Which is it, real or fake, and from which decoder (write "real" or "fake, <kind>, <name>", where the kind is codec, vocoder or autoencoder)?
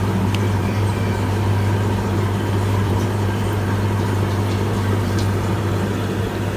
fake, vocoder, BigVGAN v2